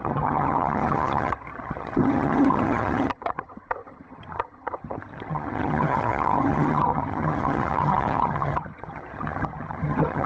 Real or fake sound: fake